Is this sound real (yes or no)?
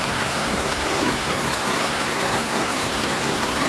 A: no